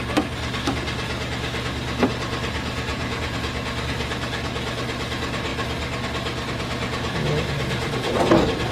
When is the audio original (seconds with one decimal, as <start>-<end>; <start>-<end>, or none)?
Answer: 0.0-2.9; 3.4-8.7